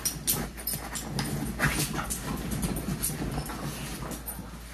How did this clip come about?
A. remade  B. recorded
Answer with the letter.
B